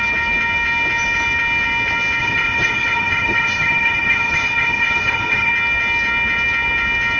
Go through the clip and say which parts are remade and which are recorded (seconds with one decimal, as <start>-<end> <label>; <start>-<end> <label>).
0.0-2.2 recorded; 2.2-5.5 remade; 5.5-7.2 recorded